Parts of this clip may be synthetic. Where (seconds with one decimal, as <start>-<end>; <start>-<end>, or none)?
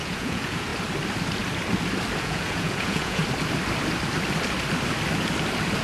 0.0-0.7; 2.2-3.2